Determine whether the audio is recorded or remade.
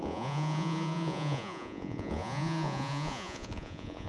remade